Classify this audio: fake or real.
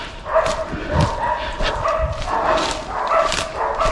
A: real